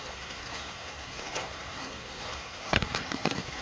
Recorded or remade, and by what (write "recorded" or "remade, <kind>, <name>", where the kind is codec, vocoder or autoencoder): remade, codec, SNAC